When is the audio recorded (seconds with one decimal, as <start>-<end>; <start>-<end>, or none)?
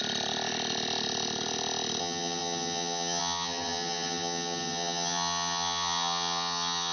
0.0-2.0